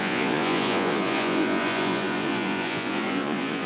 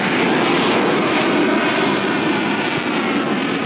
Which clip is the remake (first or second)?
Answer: first